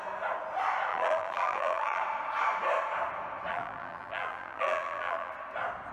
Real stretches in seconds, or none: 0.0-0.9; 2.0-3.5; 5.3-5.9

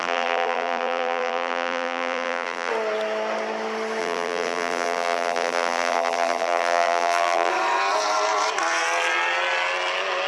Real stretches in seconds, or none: 2.7-4.0; 7.5-10.3

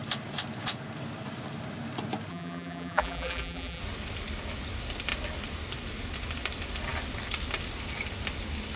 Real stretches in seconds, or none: 0.0-2.3; 3.8-8.8